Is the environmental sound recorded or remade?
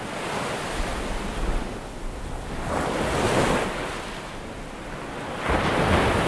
recorded